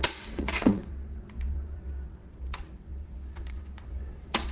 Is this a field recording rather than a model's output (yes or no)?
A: no